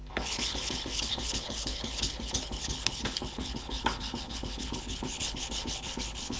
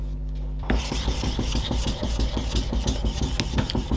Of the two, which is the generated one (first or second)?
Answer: first